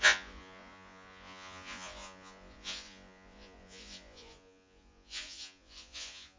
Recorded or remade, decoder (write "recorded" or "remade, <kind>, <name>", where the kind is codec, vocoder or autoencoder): remade, vocoder, Vocos